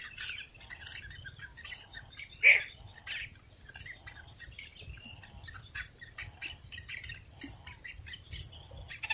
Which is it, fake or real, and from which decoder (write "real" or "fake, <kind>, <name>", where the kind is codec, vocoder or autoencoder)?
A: real